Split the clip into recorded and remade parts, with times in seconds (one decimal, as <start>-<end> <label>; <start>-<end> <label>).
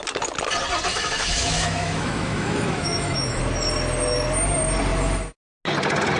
0.0-0.9 recorded; 0.9-3.4 remade; 3.4-6.2 recorded